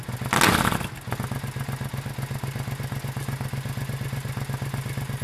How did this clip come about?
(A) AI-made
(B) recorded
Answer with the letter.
B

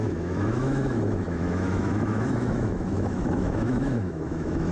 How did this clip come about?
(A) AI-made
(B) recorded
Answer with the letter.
A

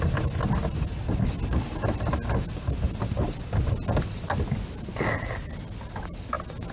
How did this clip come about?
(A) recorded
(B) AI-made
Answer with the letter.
A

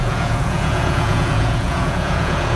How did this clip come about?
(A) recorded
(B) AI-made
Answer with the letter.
B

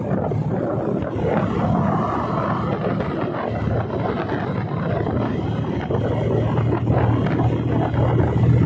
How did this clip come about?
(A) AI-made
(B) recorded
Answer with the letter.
B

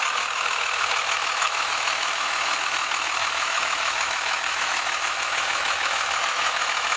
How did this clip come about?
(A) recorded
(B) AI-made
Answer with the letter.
B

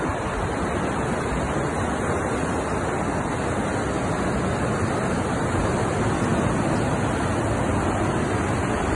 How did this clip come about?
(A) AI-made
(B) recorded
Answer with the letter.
B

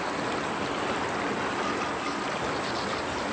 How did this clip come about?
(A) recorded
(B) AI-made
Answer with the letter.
A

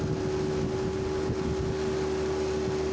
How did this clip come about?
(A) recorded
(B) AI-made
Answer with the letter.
A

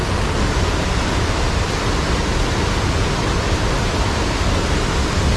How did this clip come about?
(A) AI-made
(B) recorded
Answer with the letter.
B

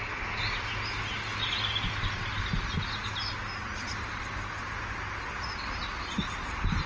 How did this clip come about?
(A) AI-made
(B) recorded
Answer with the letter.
B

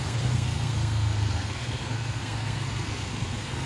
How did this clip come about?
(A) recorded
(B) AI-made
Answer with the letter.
B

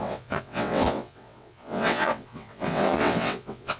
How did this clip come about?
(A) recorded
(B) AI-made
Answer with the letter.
B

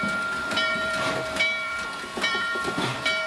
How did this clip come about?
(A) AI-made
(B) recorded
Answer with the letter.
B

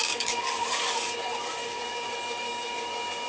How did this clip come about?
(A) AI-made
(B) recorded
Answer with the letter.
A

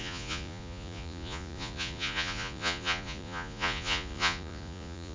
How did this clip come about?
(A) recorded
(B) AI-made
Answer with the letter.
B